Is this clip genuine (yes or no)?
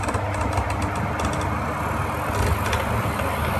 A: yes